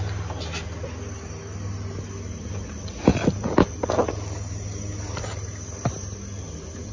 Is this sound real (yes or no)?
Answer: yes